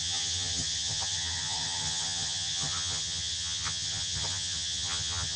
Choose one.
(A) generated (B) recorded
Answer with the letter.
A